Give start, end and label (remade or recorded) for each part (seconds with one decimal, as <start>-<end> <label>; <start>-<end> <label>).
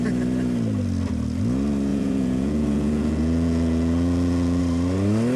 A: 0.0-1.9 recorded; 1.9-4.6 remade; 4.6-5.4 recorded